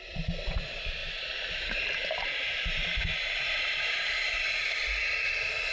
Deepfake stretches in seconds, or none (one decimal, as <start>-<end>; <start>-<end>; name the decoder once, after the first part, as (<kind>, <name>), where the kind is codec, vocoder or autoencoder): 1.0-4.4 (vocoder, BigVGAN v2)